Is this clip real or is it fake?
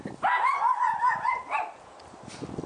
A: real